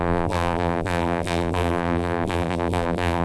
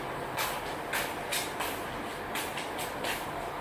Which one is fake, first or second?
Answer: first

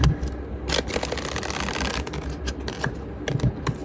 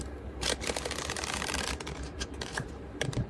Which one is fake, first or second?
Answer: second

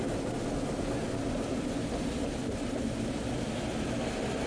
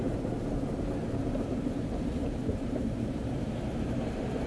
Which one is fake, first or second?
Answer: second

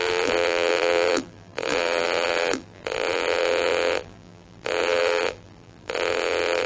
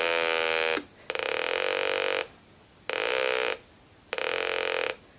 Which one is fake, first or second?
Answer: first